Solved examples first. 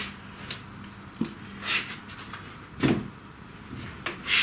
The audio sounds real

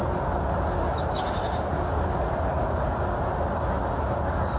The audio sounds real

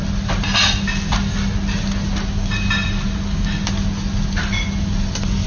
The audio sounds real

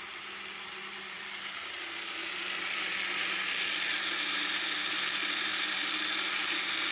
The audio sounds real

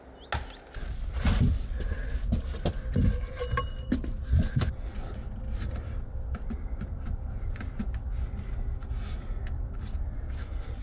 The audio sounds real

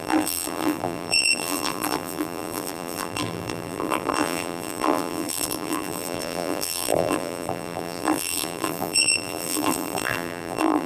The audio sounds fake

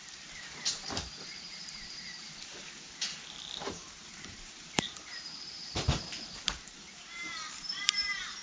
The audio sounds fake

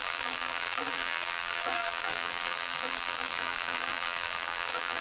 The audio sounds fake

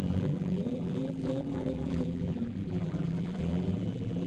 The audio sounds fake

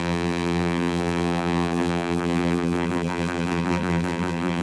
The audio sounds fake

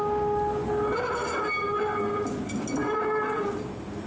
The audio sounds real